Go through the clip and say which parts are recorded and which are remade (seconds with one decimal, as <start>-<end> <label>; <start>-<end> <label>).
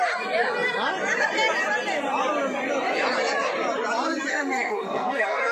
0.0-4.3 recorded; 4.3-5.5 remade